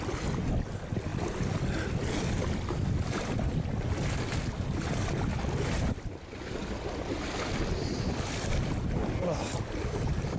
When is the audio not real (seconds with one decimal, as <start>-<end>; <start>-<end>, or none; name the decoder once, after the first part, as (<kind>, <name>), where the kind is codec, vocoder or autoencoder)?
none

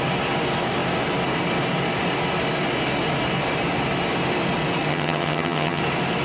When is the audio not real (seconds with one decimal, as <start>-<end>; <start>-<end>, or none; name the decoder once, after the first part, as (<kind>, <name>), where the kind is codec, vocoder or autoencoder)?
4.9-5.8 (vocoder, HiFi-GAN)

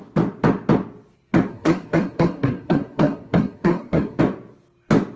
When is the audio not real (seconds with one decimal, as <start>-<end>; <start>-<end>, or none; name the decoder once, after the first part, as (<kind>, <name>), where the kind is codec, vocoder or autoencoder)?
1.5-4.2 (codec, SNAC)

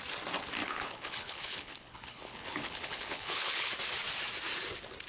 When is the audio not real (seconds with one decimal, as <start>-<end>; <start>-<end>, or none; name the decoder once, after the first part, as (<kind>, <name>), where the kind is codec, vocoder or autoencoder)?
0.6-3.7 (codec, HILCodec)